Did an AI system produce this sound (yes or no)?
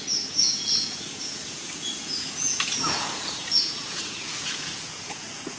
yes